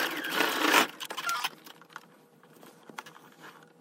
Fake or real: fake